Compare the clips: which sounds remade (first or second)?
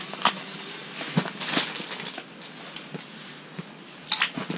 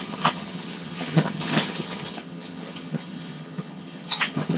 second